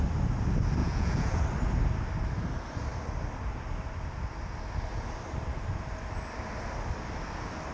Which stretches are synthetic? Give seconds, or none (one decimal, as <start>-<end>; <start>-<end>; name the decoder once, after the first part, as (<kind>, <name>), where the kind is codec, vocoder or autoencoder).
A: 0.8-1.4 (vocoder, Vocos)